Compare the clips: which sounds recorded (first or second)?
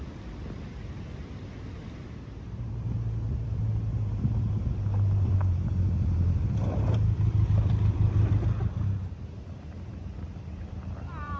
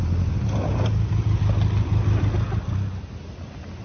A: second